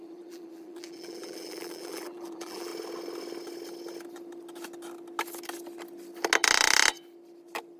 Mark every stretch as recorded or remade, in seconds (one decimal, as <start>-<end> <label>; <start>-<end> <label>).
0.0-2.7 remade; 2.7-7.8 recorded